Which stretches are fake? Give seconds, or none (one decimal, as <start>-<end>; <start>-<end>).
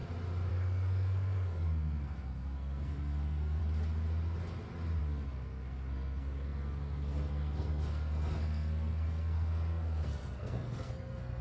0.5-3.6; 5.0-11.4